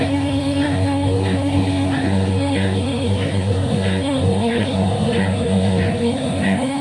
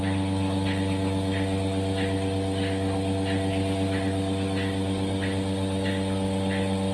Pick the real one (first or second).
second